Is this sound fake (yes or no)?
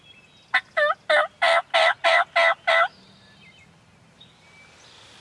no